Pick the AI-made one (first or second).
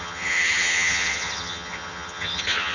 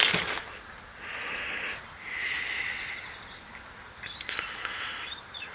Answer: first